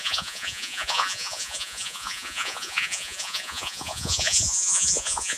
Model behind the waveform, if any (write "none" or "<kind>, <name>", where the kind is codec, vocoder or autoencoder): vocoder, Vocos